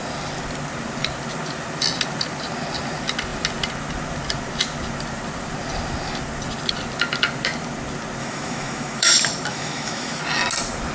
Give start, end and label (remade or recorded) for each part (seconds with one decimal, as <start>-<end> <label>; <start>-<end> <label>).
0.0-8.2 recorded; 8.2-9.1 remade; 9.1-9.5 recorded; 9.5-10.2 remade; 10.2-10.9 recorded